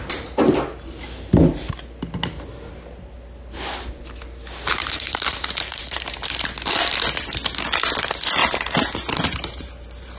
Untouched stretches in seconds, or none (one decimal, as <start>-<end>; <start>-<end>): 0.0-4.8; 6.3-8.4